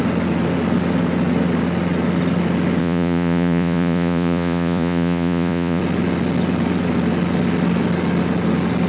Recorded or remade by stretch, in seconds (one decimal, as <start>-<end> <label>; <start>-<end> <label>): 0.0-2.8 recorded; 2.8-5.8 remade; 5.8-8.9 recorded